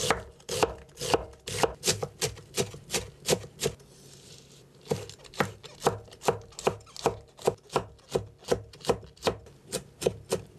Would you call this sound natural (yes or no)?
yes